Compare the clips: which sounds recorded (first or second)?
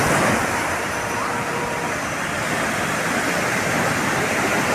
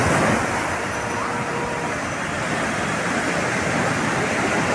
second